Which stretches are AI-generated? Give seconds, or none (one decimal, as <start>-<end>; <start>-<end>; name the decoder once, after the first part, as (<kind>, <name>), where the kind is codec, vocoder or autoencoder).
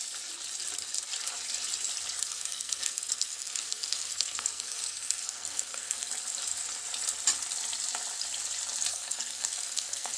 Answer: 2.2-6.1 (codec, SNAC); 8.9-10.2